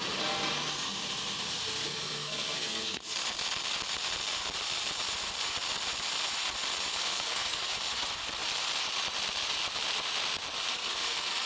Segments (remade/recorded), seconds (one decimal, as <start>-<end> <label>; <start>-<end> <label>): 0.0-1.9 recorded; 1.9-3.0 remade; 3.0-7.0 recorded; 7.0-7.7 remade; 7.7-10.7 recorded; 10.7-11.5 remade